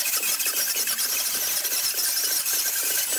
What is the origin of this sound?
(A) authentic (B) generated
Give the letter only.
A